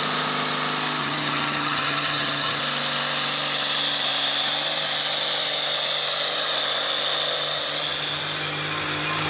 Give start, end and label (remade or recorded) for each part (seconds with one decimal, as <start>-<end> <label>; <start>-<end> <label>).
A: 0.0-1.0 recorded; 1.0-2.6 remade; 2.6-9.3 recorded